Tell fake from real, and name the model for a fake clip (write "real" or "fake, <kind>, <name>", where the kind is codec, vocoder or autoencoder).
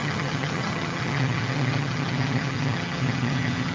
fake, vocoder, HiFi-GAN